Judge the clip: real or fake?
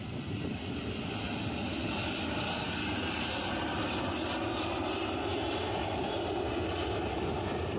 real